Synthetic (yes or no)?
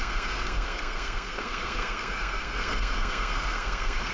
yes